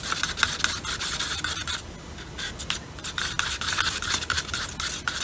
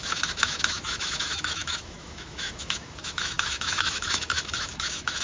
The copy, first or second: second